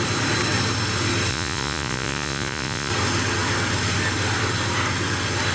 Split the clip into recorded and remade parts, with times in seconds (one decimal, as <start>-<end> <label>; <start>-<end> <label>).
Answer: 0.0-1.3 recorded; 1.3-2.9 remade; 2.9-5.5 recorded